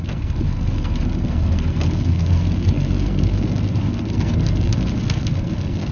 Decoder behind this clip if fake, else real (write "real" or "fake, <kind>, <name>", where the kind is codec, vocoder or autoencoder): fake, codec, SNAC